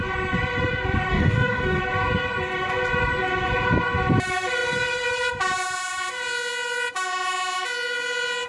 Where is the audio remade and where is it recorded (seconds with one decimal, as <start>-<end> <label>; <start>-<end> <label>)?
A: 0.0-1.1 recorded; 1.1-1.8 remade; 1.8-8.5 recorded